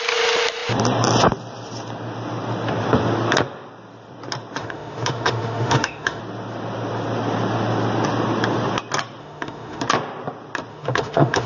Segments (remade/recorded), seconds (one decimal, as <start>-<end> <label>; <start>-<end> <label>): 0.0-4.6 recorded; 4.6-6.2 remade; 6.2-9.2 recorded; 9.2-9.8 remade; 9.8-10.7 recorded; 10.7-11.5 remade